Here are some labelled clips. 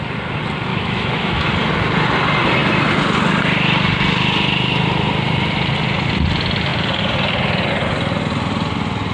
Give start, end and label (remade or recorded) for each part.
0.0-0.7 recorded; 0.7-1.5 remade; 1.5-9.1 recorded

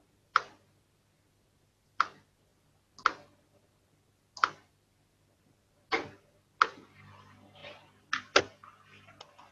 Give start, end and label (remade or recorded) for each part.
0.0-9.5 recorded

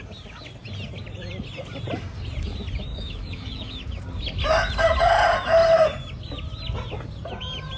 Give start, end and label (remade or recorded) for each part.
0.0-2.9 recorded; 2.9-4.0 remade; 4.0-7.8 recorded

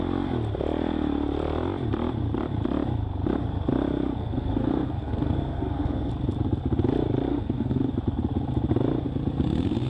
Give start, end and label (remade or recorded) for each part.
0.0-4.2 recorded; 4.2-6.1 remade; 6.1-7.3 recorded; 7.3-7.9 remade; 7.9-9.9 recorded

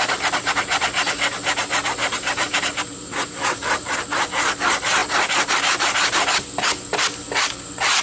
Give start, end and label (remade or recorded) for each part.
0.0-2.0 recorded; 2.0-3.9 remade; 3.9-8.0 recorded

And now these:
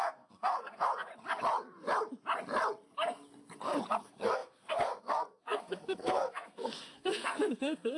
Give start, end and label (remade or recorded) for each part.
0.0-1.1 remade; 1.1-4.0 recorded; 4.0-8.0 remade

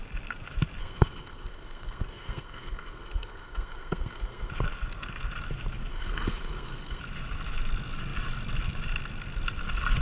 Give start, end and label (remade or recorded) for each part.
0.0-0.8 recorded; 0.8-4.5 remade; 4.5-5.9 recorded; 5.9-7.0 remade; 7.0-10.0 recorded